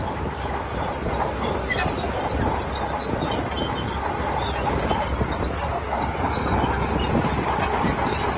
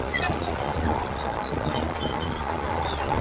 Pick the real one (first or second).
first